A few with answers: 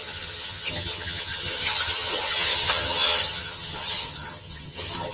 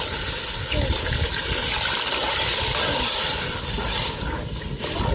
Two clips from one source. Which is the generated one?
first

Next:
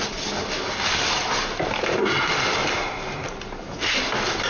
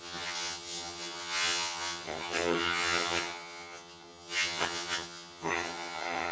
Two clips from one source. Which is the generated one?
second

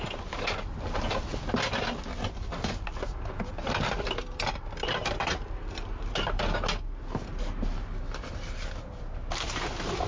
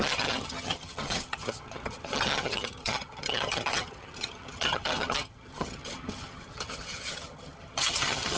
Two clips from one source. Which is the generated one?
second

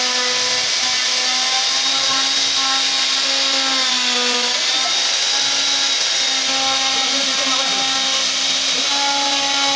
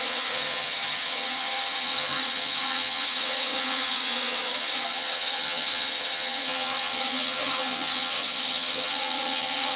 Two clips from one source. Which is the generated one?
second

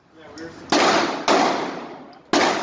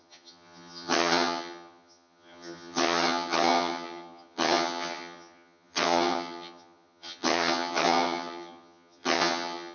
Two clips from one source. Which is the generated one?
second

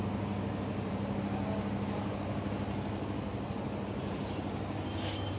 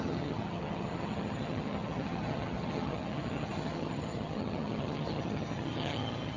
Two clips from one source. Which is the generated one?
second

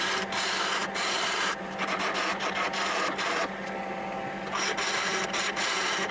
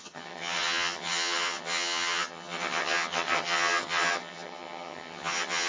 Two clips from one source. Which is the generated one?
second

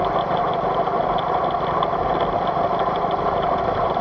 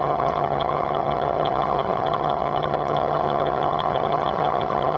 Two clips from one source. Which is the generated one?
second